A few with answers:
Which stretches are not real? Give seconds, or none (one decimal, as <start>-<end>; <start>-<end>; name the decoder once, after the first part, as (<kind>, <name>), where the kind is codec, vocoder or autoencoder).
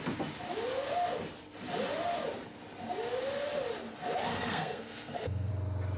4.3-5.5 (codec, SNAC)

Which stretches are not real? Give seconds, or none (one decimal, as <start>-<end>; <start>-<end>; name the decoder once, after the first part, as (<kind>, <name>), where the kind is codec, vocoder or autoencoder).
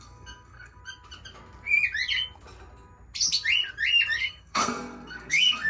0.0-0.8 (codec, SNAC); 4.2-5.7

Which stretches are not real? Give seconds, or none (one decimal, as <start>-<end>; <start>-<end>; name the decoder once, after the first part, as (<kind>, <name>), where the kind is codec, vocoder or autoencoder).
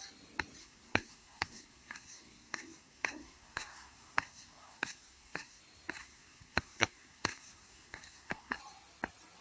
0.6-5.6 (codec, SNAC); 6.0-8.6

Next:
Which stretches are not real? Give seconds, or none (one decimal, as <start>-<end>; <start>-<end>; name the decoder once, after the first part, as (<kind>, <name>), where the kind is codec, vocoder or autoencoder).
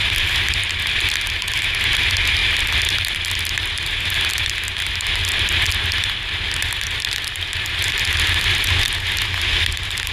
none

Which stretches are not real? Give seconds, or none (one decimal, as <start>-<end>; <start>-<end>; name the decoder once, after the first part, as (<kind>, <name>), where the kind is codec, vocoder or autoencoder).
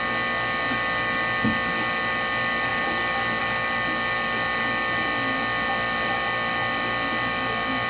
none